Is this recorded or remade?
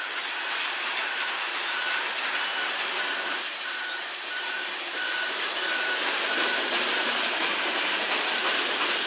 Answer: remade